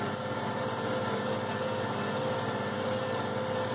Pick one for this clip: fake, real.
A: real